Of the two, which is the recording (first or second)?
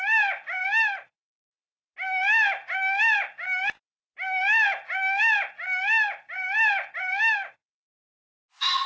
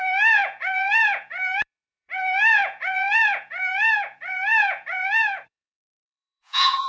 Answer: first